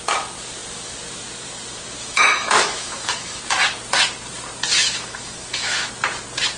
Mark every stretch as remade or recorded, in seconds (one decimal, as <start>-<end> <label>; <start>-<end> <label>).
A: 0.0-2.0 recorded; 2.0-3.4 remade; 3.4-4.8 recorded; 4.8-5.9 remade; 5.9-6.6 recorded